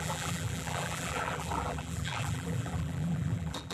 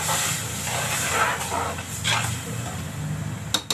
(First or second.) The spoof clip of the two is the first